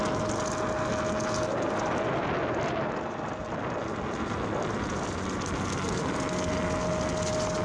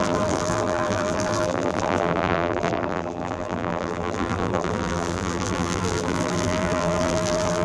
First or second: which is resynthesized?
second